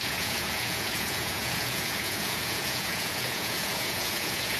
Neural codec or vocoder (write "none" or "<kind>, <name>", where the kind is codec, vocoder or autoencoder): vocoder, Vocos